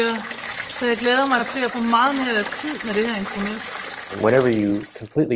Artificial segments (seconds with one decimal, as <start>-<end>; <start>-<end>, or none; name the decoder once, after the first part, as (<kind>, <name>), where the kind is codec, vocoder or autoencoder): 0.0-4.7 (autoencoder, DAC-VAE)